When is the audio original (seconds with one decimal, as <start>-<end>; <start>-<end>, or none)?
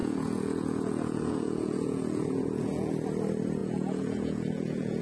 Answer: 2.9-3.6